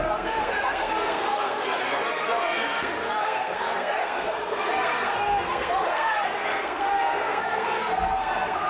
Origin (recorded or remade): remade